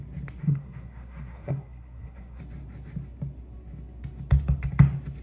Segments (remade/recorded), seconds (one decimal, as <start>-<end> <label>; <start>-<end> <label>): 0.0-0.4 recorded; 0.4-2.4 remade; 2.4-5.2 recorded